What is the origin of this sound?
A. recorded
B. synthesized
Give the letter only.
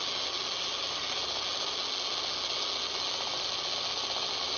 A